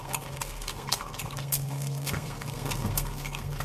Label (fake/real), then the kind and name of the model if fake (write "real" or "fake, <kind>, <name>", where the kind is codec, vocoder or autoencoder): fake, codec, SNAC